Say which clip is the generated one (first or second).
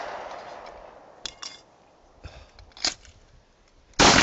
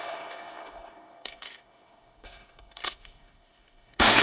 second